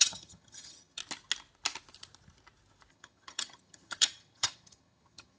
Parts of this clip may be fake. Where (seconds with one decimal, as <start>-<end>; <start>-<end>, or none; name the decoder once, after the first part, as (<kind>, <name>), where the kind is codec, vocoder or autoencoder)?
0.0-1.0 (vocoder, HiFi-GAN); 2.9-5.4